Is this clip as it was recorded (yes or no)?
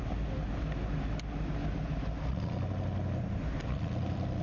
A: yes